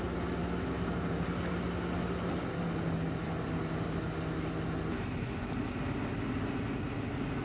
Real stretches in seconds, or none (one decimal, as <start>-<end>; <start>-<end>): 0.0-7.4